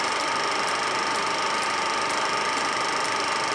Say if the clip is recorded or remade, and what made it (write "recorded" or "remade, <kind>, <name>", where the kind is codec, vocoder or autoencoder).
recorded